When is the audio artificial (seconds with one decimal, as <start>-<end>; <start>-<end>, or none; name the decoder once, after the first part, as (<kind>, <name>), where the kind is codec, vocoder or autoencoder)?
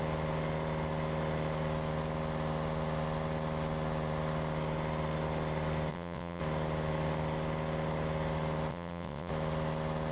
5.9-6.4 (vocoder, WaveNeXt); 8.7-9.3